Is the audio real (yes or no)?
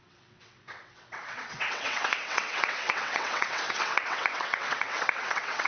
no